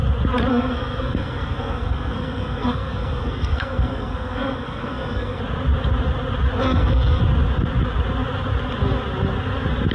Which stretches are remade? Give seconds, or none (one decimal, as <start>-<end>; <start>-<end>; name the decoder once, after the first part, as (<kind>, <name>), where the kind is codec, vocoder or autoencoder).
0.5-5.4 (codec, SNAC); 6.6-7.2

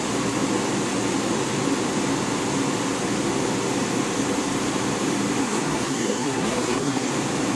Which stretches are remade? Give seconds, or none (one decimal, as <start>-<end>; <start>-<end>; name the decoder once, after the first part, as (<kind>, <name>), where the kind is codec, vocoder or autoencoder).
5.4-7.1 (codec, SNAC)

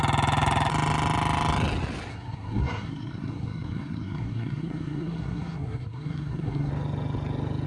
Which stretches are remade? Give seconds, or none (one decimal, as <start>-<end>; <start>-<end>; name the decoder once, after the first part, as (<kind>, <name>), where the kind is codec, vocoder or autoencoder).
2.1-6.7 (codec, SNAC)

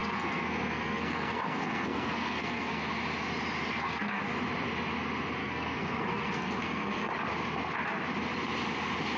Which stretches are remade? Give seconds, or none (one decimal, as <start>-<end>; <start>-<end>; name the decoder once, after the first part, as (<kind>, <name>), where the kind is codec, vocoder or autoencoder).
0.0-2.9 (codec, SNAC); 3.7-4.2; 5.4-7.1

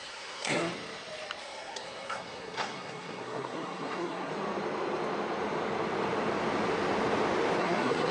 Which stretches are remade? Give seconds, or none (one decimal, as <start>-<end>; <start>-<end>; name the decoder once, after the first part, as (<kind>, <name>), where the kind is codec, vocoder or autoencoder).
0.0-0.7 (codec, SNAC); 1.4-4.3; 7.6-8.1

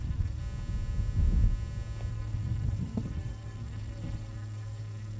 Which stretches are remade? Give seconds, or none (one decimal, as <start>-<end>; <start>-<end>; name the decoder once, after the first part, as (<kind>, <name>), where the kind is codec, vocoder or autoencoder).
0.0-0.4 (codec, SNAC); 2.1-5.2